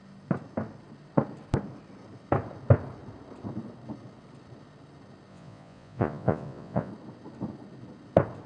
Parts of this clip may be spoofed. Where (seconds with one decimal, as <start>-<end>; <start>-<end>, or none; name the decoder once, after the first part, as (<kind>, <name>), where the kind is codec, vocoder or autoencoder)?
5.3-6.9 (vocoder, Vocos)